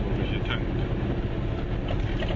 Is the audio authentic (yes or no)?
yes